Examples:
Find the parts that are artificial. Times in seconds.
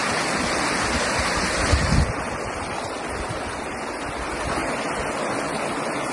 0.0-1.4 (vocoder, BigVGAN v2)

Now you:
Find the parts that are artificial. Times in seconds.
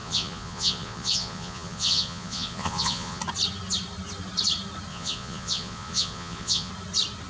0.0-3.2 (vocoder, Vocos); 4.9-6.7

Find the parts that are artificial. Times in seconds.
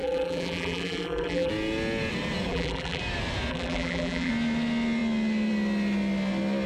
0.0-1.5 (vocoder, BigVGAN v2); 2.5-3.0; 3.5-4.3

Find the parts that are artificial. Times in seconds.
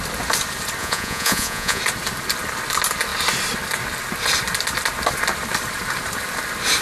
0.8-1.8 (vocoder, Vocos)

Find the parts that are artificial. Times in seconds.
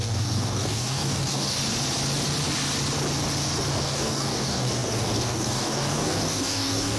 0.0-1.6 (codec, DAC); 3.7-7.0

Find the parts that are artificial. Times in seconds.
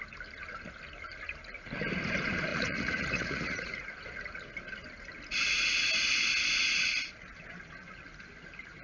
2.5-3.9 (vocoder, Vocos)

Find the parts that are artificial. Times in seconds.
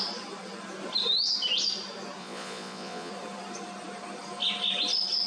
2.2-3.1 (vocoder, Vocos)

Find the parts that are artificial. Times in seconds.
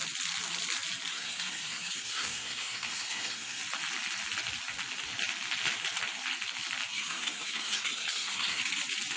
1.1-3.6 (codec, SNAC); 6.9-8.6